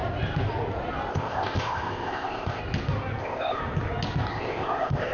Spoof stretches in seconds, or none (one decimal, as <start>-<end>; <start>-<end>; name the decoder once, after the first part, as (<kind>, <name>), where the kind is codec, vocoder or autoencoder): 1.1-2.6 (codec, ZipCodec); 3.2-3.6; 4.3-5.1